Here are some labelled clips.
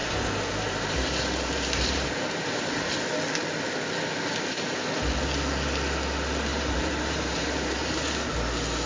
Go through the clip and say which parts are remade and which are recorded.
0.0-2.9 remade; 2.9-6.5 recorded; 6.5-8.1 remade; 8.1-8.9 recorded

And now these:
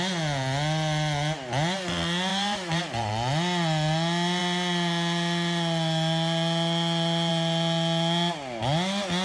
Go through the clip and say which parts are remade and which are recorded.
0.0-2.3 recorded; 2.3-3.1 remade; 3.1-9.2 recorded

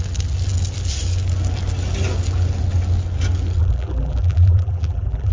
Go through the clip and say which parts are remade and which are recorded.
0.0-3.6 recorded; 3.6-5.3 remade

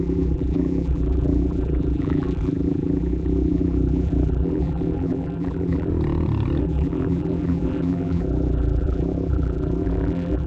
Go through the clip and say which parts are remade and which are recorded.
0.0-5.9 remade; 5.9-6.6 recorded; 6.6-10.5 remade